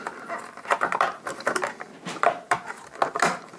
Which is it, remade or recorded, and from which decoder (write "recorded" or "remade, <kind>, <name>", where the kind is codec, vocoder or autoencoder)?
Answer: recorded